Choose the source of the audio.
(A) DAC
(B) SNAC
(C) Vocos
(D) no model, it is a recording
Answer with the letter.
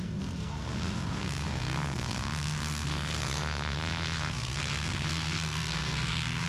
B